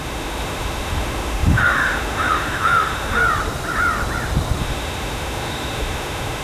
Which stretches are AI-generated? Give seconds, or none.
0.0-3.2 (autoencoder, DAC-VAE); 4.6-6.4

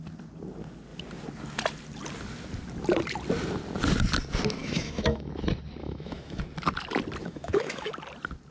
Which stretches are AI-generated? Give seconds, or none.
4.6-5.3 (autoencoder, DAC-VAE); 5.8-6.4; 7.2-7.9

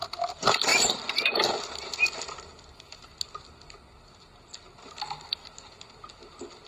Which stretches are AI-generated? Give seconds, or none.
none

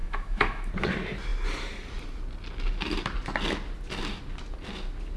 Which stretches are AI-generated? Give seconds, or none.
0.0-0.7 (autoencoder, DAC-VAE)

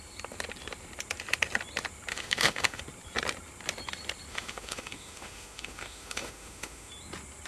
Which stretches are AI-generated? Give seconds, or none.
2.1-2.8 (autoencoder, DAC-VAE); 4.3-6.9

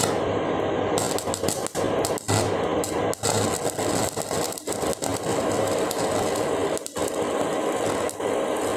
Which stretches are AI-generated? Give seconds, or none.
none